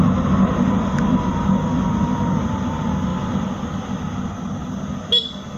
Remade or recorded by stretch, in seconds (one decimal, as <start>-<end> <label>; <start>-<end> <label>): 0.0-5.6 recorded